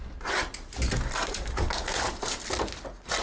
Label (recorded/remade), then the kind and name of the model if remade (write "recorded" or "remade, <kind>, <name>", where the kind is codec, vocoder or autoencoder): recorded